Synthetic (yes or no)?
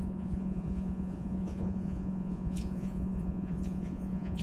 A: yes